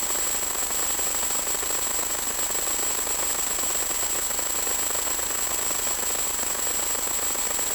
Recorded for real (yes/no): yes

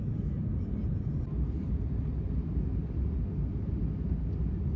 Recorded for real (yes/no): yes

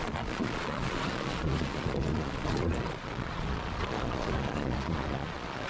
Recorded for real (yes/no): no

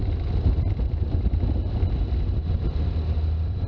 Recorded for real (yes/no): no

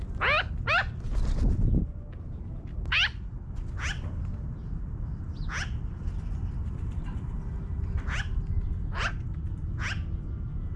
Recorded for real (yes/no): yes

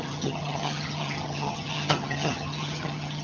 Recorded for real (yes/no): no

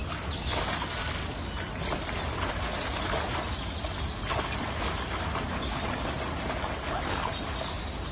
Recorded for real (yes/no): yes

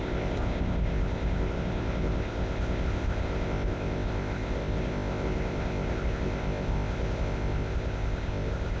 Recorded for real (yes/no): no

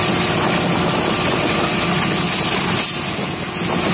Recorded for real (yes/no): yes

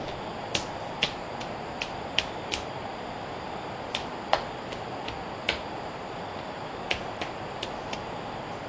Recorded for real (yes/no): yes